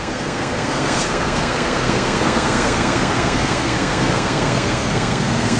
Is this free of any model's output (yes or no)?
no